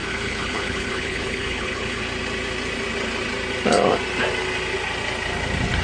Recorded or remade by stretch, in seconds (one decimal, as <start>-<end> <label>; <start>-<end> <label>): 0.0-2.0 remade; 2.0-5.8 recorded